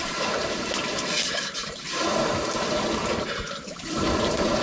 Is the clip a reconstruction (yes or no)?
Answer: yes